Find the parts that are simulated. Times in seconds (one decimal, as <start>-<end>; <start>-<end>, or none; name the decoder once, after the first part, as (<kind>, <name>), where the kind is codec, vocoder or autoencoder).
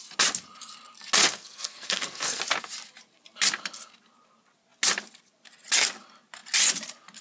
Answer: 1.2-2.4 (codec, SNAC)